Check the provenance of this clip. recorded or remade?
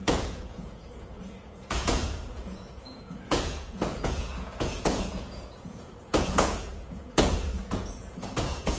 remade